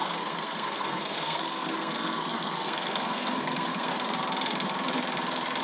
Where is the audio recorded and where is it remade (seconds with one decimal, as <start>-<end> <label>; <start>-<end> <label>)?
0.0-3.9 remade; 3.9-5.6 recorded